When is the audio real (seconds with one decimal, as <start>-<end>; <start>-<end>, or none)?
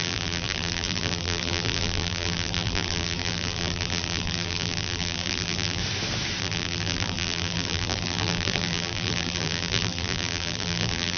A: 5.8-6.4